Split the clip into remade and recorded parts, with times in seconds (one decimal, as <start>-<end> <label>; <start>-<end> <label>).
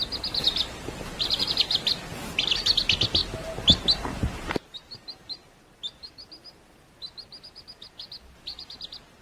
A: 0.0-9.2 recorded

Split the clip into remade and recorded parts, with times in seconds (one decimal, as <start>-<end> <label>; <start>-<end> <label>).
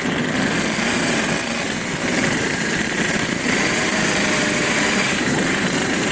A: 0.0-2.1 recorded; 2.1-6.1 remade